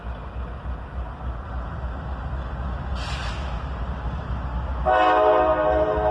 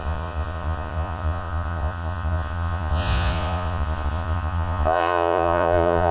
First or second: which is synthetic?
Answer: second